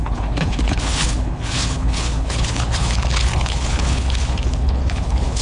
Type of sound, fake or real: fake